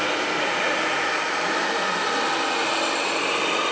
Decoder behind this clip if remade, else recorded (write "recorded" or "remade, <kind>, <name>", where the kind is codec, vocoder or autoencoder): recorded